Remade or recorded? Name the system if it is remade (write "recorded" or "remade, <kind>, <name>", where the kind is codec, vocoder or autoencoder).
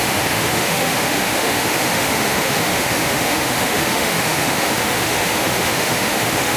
remade, autoencoder, DAC-VAE